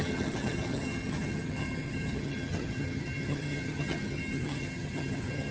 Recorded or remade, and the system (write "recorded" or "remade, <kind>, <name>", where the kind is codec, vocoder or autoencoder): remade, vocoder, HiFi-GAN